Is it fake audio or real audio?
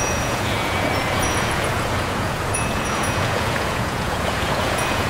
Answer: fake